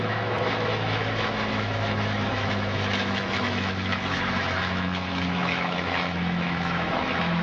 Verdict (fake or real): fake